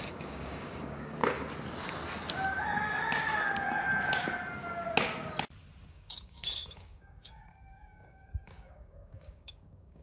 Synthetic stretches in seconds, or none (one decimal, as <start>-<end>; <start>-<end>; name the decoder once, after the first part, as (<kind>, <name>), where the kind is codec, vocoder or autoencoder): 0.0-1.2 (codec, DAC); 5.9-10.0